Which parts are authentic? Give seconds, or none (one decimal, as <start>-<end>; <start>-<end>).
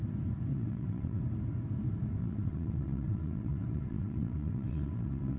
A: 0.0-0.5; 1.2-2.2